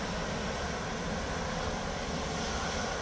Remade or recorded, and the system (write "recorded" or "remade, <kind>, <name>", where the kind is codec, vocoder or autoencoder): recorded